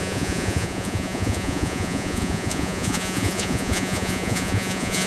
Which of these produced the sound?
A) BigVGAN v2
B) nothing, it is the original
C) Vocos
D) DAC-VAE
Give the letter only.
C